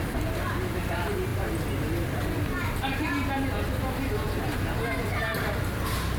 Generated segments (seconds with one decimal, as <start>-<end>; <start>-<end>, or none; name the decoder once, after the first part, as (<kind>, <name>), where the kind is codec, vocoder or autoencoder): none